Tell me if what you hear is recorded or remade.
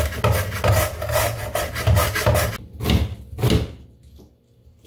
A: recorded